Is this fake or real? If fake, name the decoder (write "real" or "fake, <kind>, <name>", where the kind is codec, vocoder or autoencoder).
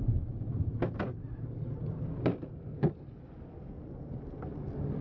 real